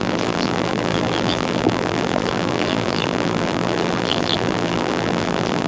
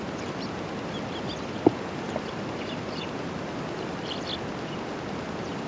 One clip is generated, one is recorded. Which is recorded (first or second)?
second